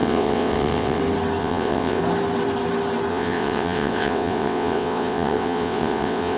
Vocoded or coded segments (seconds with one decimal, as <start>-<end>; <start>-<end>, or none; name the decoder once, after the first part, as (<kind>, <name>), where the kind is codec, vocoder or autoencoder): 0.0-1.0 (vocoder, WaveNeXt); 1.4-2.0; 3.1-6.4